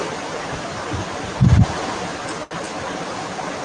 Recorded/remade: recorded